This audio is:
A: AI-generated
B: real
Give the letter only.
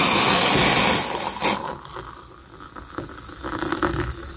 B